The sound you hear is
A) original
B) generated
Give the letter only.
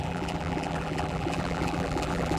B